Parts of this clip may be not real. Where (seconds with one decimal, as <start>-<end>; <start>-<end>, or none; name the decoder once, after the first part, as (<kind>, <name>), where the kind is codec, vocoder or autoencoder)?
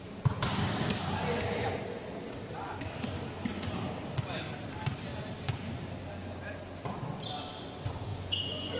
8.1-8.8 (vocoder, Vocos)